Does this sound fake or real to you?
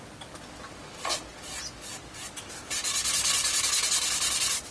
real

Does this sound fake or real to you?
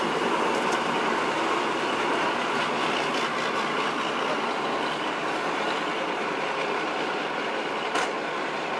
real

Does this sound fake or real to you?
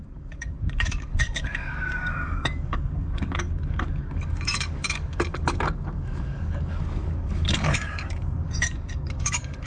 fake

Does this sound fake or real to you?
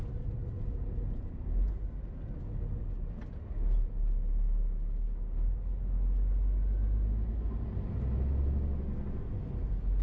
real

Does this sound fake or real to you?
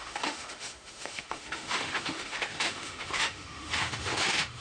fake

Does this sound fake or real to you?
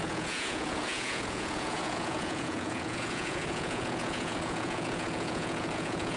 fake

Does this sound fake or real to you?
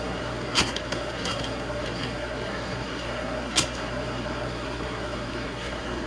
fake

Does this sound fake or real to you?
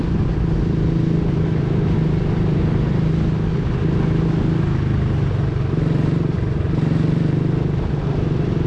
real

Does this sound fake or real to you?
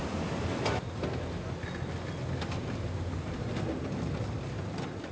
real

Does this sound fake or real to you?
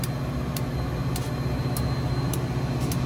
real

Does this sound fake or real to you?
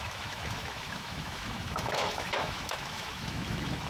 fake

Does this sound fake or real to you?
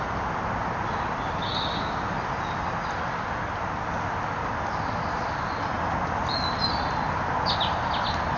real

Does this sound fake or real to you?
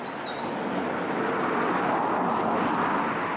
real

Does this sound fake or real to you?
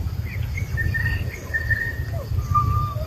fake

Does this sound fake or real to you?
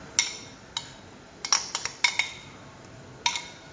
real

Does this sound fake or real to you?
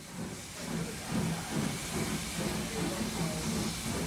real